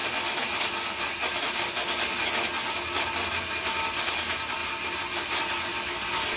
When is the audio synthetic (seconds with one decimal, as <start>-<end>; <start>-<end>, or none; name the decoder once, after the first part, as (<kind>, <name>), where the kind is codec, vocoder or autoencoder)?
none